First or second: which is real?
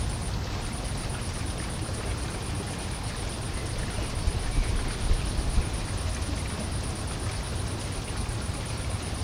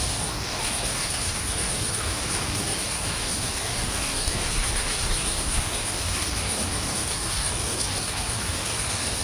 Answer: first